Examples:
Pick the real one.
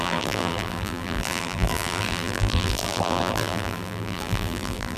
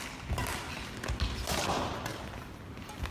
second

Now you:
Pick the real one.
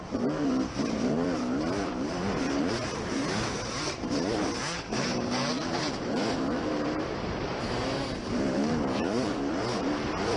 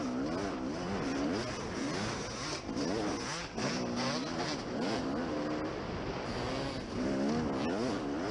second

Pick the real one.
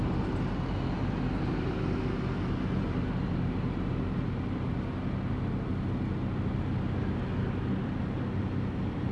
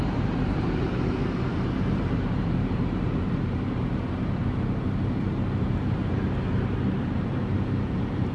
first